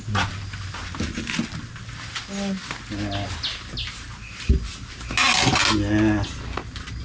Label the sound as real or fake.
real